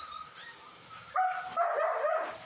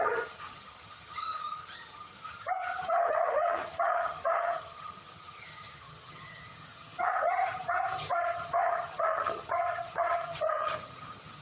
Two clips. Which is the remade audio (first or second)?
second